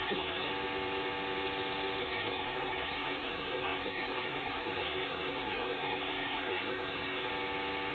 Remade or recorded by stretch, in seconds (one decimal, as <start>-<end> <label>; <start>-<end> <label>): 0.0-0.5 remade; 0.5-2.0 recorded; 2.0-7.3 remade; 7.3-7.9 recorded